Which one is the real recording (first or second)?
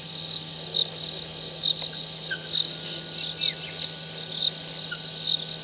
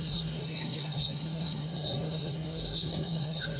first